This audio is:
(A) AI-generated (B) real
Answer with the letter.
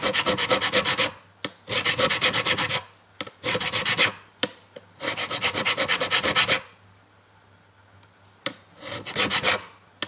B